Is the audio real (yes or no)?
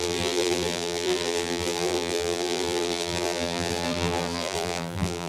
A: no